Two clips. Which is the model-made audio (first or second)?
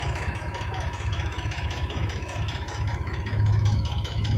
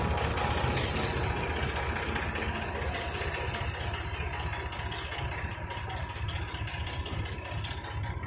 first